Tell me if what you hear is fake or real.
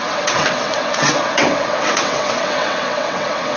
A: fake